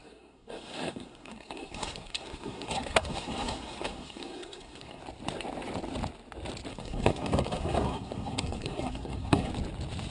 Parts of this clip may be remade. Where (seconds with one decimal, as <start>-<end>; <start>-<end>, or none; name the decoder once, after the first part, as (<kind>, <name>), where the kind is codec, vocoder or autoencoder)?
0.0-5.0 (codec, SNAC); 6.7-9.5